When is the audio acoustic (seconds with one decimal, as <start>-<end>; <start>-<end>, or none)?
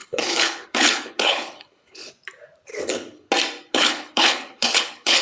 2.1-2.7; 3.3-3.7